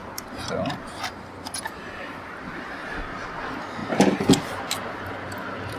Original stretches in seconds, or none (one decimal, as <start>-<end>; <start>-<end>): 0.0-5.8